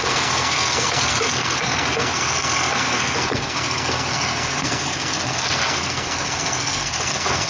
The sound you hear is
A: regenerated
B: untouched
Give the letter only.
A